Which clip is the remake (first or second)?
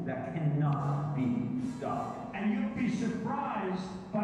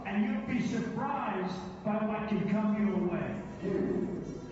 first